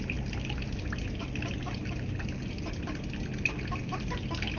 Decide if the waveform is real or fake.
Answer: real